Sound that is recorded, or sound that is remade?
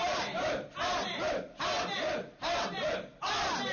recorded